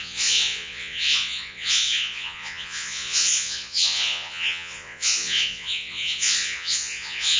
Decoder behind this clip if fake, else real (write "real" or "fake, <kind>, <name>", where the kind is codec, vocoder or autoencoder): fake, vocoder, Vocos